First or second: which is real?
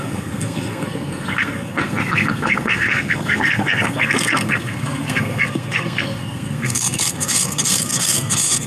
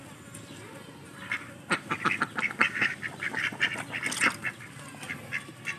second